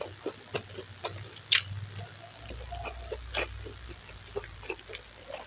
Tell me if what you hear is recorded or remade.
recorded